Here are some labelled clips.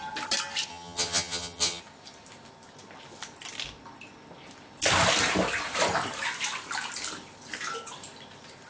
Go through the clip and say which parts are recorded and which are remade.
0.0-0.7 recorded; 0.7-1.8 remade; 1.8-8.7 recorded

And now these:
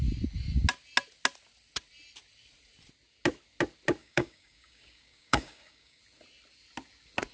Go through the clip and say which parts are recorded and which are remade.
0.0-4.0 recorded; 4.0-6.0 remade; 6.0-7.3 recorded

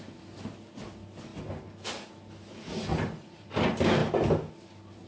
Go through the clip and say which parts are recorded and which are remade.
0.0-2.9 recorded; 2.9-3.5 remade; 3.5-5.1 recorded

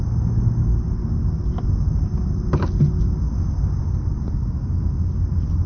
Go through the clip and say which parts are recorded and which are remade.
0.0-5.7 recorded

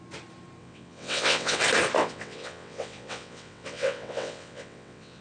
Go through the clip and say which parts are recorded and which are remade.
0.0-0.6 recorded; 0.6-1.6 remade; 1.6-2.0 recorded; 2.0-5.2 remade